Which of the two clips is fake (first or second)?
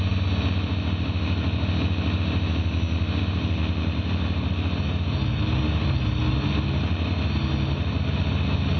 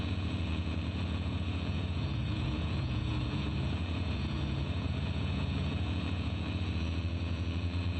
second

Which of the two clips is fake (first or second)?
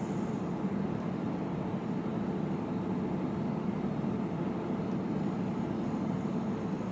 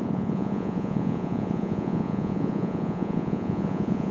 second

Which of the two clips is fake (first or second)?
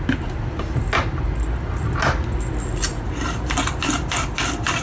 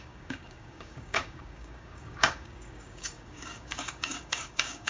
second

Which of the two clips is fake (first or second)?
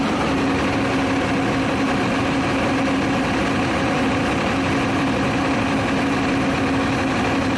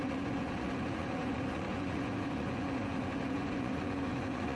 second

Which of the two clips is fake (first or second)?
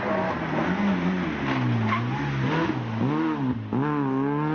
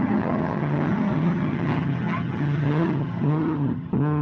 second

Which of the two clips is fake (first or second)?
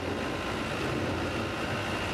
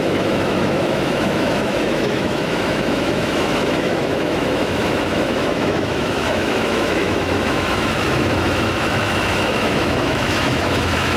second